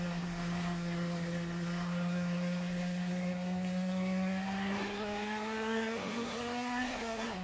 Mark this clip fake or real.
fake